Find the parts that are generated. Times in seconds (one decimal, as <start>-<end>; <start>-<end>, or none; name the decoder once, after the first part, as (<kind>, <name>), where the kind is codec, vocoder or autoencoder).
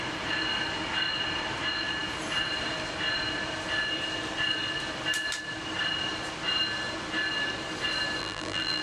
8.2-8.8 (vocoder, BigVGAN v2)